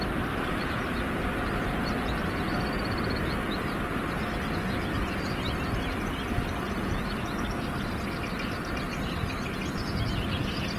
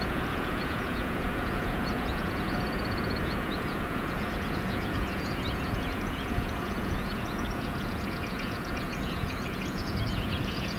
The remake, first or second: second